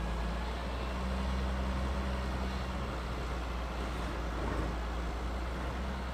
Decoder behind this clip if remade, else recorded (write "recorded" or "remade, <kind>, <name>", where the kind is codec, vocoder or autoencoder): recorded